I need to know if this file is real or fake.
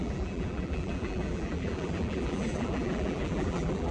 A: fake